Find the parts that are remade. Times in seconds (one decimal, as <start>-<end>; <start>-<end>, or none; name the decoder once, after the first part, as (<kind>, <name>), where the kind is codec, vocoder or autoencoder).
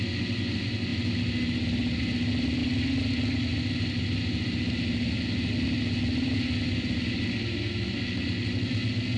none